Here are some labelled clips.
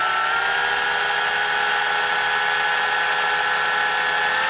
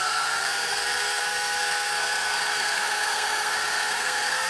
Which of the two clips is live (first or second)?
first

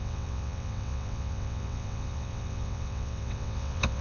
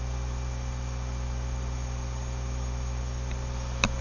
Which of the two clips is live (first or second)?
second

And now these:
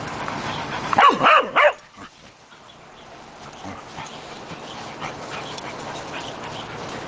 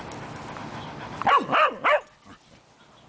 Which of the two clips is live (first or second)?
second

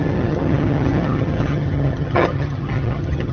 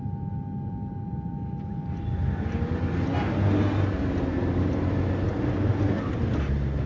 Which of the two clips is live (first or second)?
second